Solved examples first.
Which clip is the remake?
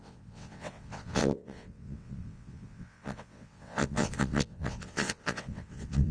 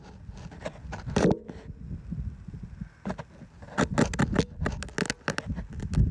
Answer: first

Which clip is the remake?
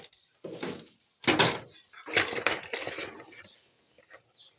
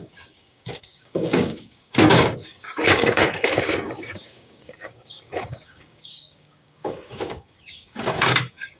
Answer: second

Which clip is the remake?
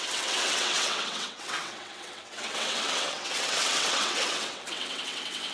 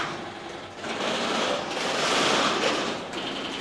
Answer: first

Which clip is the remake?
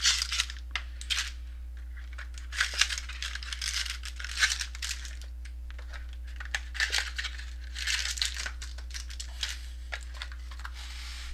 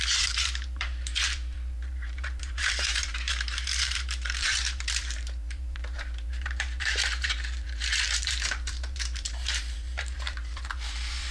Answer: second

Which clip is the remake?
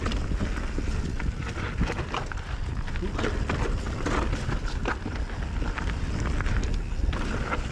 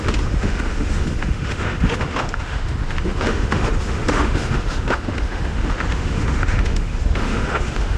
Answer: second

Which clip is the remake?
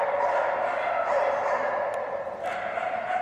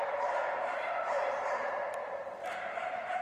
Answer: second